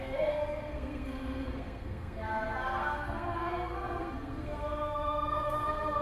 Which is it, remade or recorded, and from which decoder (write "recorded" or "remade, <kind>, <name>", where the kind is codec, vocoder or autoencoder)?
remade, codec, SNAC